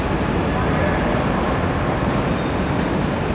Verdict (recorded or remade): recorded